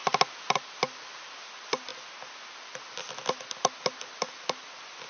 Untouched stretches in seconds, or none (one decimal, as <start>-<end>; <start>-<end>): 0.0-5.1